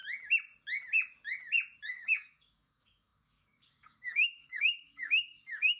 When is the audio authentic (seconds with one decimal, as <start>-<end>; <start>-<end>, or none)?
0.0-1.8